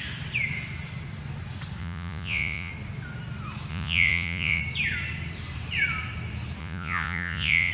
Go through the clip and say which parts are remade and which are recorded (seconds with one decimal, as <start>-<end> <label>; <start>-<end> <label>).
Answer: 0.0-1.8 recorded; 1.8-2.7 remade; 2.7-3.7 recorded; 3.7-4.6 remade; 4.6-6.6 recorded; 6.6-7.7 remade